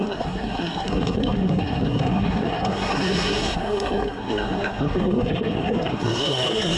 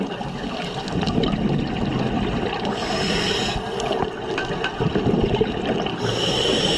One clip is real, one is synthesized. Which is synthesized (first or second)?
first